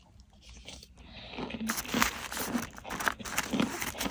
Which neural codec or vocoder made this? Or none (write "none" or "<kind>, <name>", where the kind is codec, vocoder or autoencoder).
none